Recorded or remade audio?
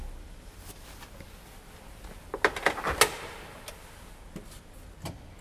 recorded